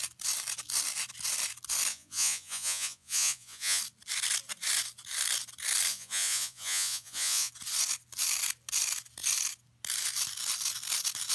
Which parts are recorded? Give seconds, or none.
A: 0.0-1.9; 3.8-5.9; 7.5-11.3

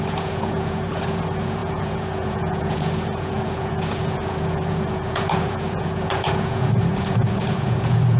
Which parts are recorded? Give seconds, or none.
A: none

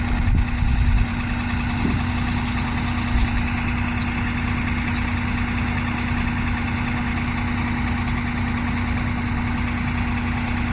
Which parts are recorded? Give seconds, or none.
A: 0.0-10.7

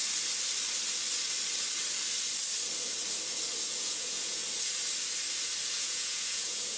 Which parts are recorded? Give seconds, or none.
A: 0.0-3.8; 4.4-5.7

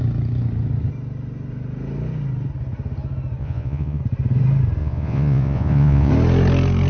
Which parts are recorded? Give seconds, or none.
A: 0.0-3.4; 4.0-4.8; 6.1-6.9

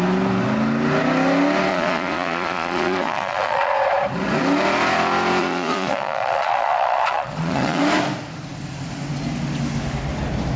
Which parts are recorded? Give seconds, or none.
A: 0.0-1.7; 3.7-5.4; 7.8-10.6

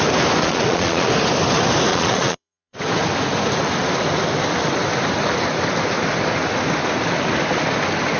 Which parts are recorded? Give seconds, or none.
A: 0.0-0.4; 1.1-1.9; 2.8-8.2